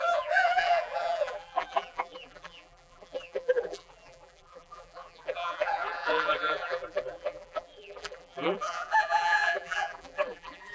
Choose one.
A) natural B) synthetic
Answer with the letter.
B